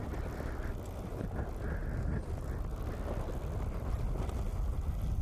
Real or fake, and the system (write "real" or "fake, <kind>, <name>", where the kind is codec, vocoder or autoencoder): real